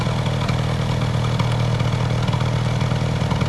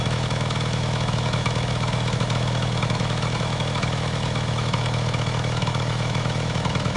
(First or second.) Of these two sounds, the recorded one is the first